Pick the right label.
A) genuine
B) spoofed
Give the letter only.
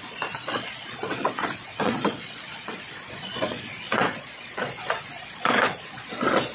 B